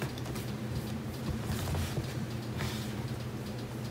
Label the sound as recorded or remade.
remade